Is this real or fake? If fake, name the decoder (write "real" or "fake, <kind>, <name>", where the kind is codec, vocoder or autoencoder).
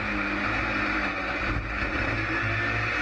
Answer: real